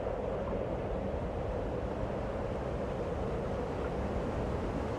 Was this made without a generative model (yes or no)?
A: yes